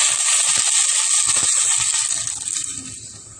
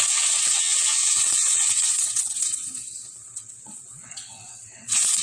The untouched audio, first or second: first